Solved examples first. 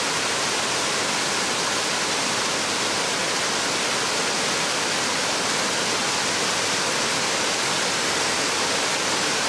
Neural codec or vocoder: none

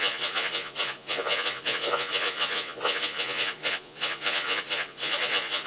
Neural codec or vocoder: vocoder, Vocos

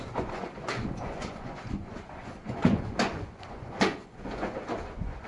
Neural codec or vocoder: vocoder, Vocos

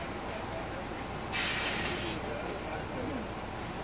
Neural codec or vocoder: none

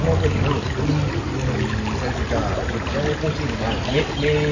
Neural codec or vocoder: none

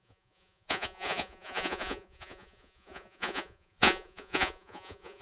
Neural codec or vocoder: vocoder, Vocos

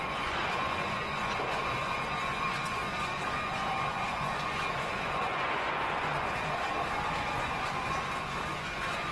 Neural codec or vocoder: vocoder, Vocos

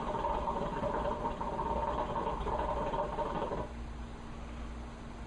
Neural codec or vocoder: none